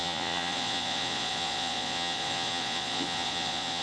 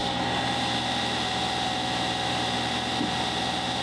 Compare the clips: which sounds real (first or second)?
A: second